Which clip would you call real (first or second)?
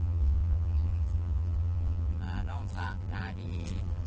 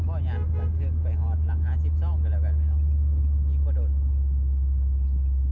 second